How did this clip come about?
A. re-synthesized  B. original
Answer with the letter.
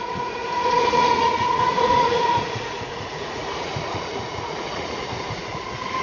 A